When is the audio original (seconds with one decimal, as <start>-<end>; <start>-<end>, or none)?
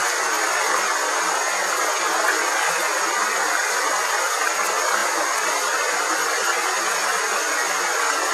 0.0-8.3